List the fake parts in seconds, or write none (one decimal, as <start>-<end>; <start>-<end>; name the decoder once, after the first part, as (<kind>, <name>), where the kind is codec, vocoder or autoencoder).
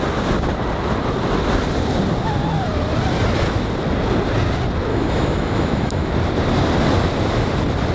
4.9-6.1 (autoencoder, DAC-VAE)